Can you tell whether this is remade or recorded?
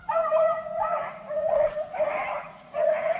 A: remade